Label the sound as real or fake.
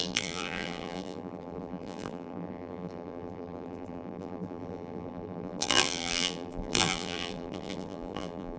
fake